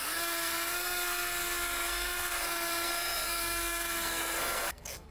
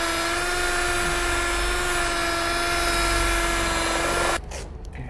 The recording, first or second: second